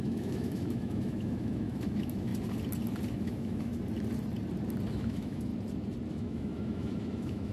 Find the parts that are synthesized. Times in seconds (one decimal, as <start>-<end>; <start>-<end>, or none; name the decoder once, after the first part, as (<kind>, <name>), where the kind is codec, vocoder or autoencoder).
0.0-2.3 (autoencoder, DAC-VAE); 3.1-3.7; 4.9-5.5; 6.1-7.5